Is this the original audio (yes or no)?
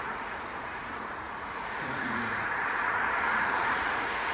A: no